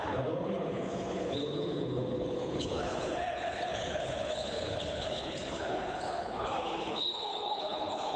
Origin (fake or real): fake